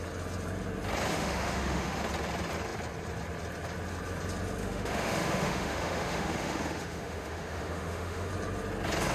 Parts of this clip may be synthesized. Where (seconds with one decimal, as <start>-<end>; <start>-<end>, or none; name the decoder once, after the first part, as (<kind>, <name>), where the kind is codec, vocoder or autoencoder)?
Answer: 1.1-2.0 (autoencoder, DAC-VAE); 4.6-8.3